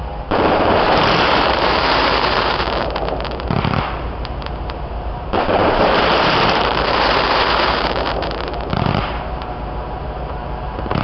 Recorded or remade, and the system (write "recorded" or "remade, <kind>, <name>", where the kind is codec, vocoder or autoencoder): remade, vocoder, BigVGAN v2